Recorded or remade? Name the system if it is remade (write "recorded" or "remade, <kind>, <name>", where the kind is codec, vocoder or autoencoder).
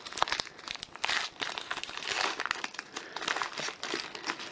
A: recorded